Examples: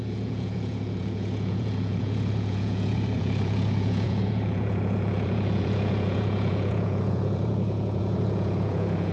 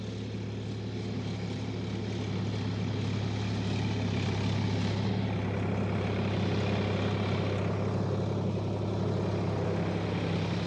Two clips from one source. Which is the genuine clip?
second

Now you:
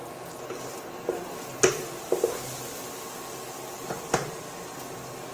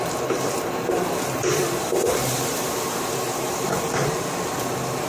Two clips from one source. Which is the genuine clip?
first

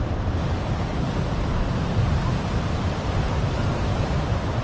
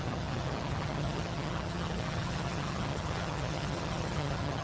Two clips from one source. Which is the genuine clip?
first